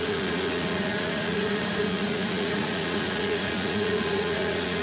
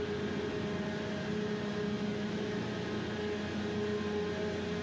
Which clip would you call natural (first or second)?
second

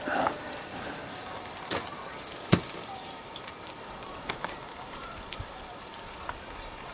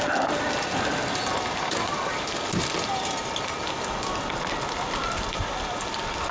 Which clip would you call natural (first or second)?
second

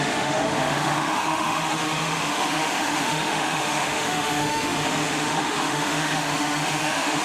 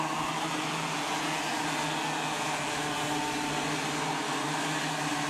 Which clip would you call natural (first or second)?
second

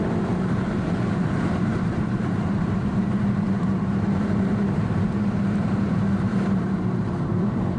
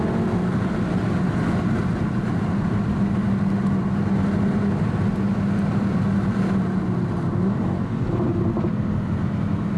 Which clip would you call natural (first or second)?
second